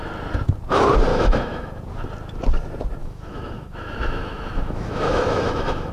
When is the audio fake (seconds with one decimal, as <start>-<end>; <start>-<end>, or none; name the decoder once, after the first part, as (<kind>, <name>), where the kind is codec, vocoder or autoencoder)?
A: 1.1-1.7 (autoencoder, DAC-VAE); 3.0-5.9